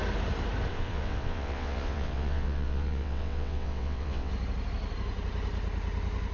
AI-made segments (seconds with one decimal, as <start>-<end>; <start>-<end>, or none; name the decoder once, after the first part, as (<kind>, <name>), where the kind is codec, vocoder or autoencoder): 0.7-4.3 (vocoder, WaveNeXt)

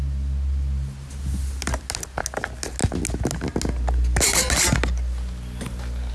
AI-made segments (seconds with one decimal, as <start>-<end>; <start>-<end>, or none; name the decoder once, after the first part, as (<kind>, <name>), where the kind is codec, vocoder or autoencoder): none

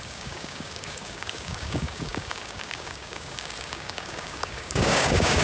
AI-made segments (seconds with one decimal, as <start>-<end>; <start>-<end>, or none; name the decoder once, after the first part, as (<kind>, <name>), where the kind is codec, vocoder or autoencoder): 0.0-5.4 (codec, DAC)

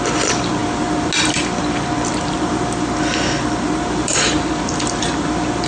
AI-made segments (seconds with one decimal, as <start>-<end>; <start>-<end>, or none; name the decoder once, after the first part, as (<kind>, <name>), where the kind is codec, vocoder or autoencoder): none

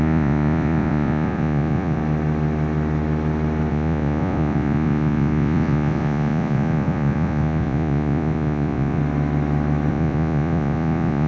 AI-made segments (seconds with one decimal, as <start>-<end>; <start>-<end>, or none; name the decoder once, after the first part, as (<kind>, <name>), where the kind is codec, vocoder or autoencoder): 0.0-2.0 (vocoder, Vocos); 3.7-9.0; 9.9-11.3